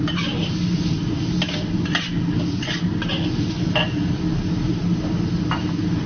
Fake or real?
real